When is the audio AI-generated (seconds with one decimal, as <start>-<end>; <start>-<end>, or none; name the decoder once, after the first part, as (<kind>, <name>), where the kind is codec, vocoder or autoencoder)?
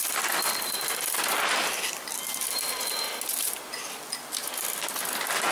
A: 0.0-2.3 (vocoder, BigVGAN v2)